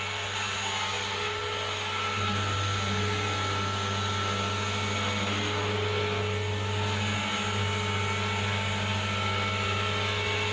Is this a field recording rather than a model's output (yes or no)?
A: yes